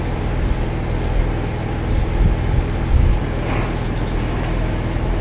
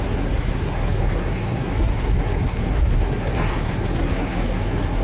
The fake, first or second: second